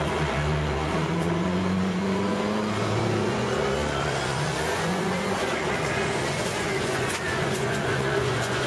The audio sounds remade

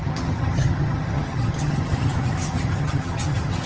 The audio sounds remade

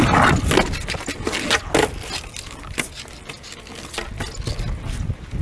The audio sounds recorded